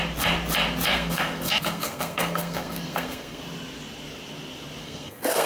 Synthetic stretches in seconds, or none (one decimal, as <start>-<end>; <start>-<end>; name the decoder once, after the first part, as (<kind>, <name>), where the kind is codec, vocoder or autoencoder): 0.9-3.4 (codec, SNAC); 4.8-5.5